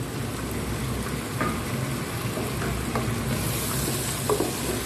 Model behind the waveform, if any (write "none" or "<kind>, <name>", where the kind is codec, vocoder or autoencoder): none